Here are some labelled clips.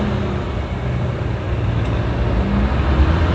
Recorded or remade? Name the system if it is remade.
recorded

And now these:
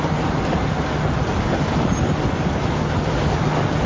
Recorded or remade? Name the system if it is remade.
recorded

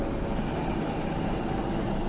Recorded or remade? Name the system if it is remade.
recorded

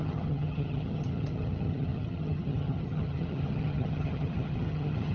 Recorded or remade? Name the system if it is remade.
remade, vocoder, HiFi-GAN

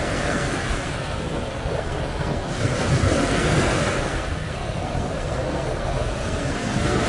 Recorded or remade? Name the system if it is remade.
remade, codec, SNAC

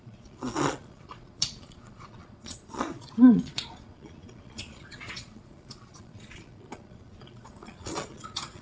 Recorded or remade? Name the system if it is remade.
remade, vocoder, Vocos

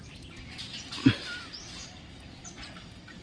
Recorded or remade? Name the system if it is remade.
recorded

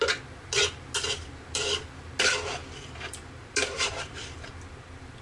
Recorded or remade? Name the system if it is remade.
remade, vocoder, BigVGAN v2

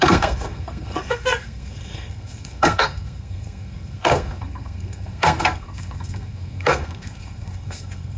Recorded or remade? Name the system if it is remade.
remade, codec, SNAC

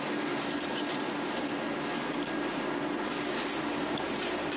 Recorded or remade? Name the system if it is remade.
recorded